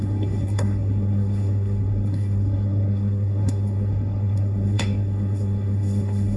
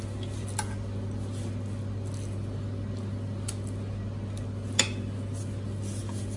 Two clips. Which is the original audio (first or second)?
second